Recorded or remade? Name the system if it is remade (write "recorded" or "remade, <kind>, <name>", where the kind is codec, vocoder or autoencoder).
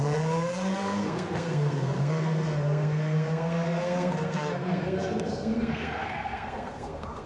remade, codec, SNAC